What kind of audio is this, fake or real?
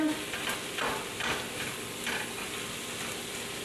real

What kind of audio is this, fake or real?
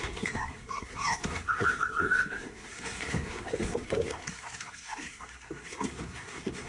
fake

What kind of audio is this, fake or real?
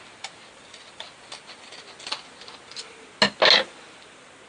real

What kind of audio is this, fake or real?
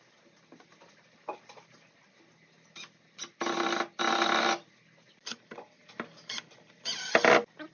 real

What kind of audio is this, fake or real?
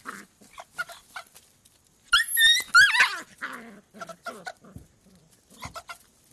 real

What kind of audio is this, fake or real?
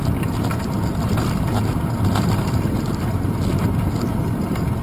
real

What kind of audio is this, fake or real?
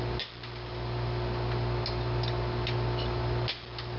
real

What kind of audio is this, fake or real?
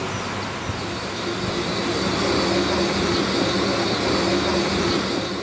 real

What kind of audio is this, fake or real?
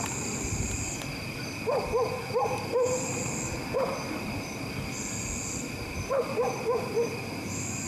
real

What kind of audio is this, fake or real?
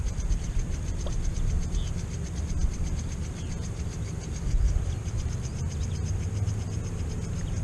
real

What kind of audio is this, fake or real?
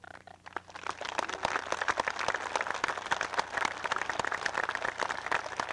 real